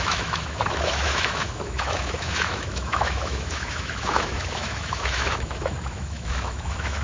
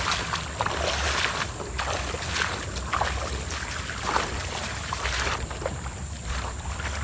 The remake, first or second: first